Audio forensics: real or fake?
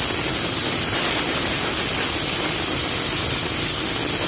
real